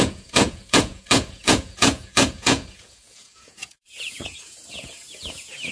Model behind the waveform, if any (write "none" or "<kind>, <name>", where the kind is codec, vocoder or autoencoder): vocoder, Vocos